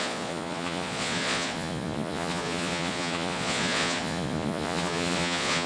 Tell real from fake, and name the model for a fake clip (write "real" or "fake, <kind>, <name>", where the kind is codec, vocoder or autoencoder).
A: fake, vocoder, Vocos